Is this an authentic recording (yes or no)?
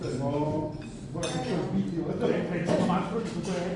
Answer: yes